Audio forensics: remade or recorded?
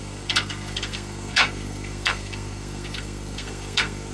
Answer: remade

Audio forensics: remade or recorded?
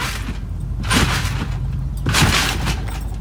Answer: recorded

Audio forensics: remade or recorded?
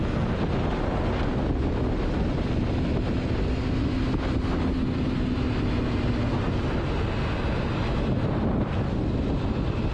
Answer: recorded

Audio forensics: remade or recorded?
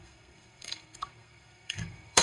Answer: remade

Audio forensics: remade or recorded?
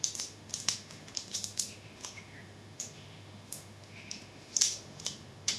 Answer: remade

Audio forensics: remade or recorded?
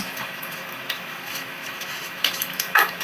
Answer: remade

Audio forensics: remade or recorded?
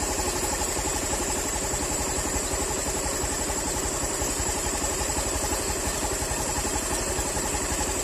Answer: recorded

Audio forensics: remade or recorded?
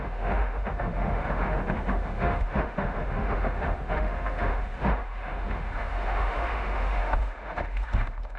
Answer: remade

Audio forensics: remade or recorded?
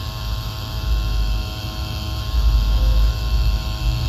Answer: remade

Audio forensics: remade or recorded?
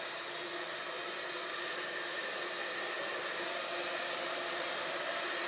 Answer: recorded